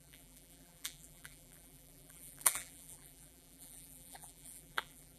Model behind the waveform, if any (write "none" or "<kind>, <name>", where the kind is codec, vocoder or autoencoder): vocoder, BigVGAN v2